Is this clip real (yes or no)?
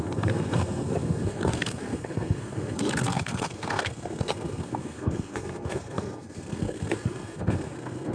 no